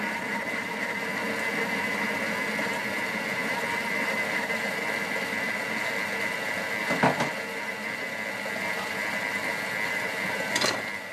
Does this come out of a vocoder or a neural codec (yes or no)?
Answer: no